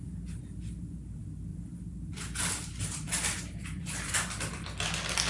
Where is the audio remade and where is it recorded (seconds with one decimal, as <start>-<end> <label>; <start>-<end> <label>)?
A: 0.0-1.5 recorded; 1.5-4.1 remade; 4.1-5.3 recorded